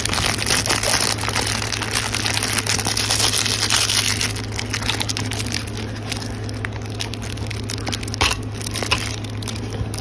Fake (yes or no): no